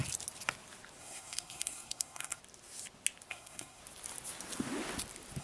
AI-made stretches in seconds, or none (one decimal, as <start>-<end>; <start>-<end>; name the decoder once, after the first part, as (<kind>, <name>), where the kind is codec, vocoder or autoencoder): 1.0-2.4 (codec, SNAC); 3.3-3.8

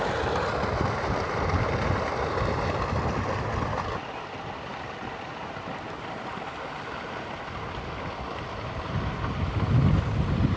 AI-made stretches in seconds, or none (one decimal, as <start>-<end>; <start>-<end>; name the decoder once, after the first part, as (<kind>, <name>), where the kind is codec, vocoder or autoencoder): none

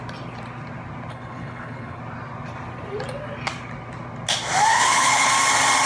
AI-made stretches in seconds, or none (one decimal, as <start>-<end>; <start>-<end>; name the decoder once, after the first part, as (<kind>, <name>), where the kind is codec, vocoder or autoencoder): 1.1-2.0 (codec, HILCodec); 4.7-5.3

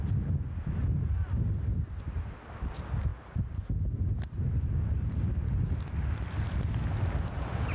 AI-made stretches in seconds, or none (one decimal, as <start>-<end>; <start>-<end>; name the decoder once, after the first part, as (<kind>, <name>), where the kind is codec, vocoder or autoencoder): 1.7-2.3 (vocoder, BigVGAN v2)

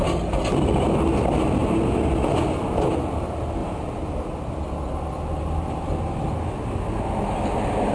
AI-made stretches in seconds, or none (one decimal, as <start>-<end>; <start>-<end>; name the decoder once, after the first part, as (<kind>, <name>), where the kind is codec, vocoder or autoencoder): none

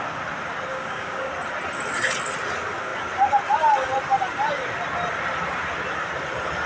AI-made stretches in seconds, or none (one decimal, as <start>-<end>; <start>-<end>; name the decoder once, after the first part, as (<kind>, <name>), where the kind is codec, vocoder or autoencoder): 0.7-1.3 (codec, DAC)